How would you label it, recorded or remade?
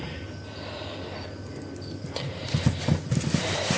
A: recorded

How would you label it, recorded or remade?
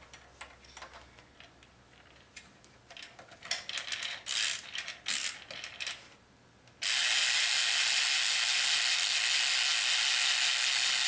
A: recorded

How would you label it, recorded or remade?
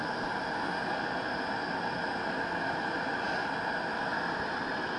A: recorded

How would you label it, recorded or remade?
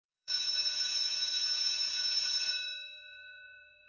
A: remade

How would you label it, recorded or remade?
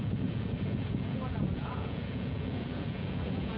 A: remade